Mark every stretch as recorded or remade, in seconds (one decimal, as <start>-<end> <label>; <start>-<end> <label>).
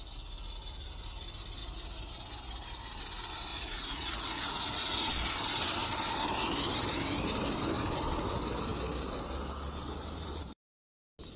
0.0-3.5 recorded; 3.5-5.1 remade; 5.1-11.4 recorded